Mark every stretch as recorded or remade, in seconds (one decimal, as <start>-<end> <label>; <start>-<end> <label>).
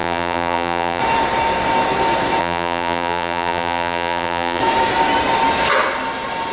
0.0-1.0 remade; 1.0-2.4 recorded; 2.4-4.6 remade; 4.6-6.5 recorded